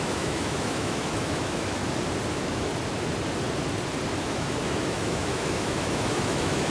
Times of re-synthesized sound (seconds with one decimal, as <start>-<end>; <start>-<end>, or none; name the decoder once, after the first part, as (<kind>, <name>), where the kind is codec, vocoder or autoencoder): 0.0-1.8 (autoencoder, DAC-VAE); 2.3-2.7; 4.2-6.7